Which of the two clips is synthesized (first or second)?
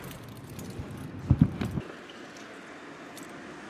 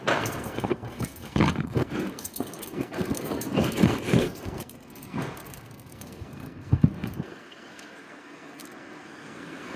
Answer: second